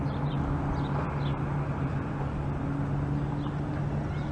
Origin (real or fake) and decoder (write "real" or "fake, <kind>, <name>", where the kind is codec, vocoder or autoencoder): real